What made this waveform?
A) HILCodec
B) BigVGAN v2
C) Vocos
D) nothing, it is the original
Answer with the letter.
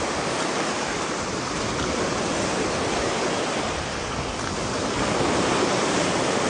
D